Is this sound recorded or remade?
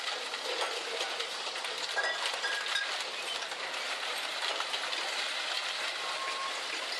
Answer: recorded